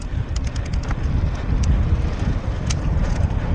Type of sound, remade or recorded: recorded